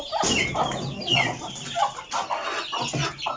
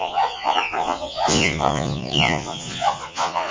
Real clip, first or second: first